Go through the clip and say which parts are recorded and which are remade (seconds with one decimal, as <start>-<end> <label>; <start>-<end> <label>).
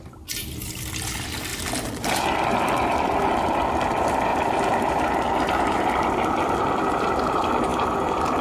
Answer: 0.0-8.4 recorded